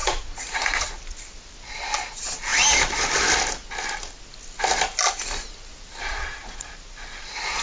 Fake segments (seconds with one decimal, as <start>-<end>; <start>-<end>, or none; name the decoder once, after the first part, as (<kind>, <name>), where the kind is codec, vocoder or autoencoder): 0.0-0.9 (vocoder, Vocos); 6.0-6.7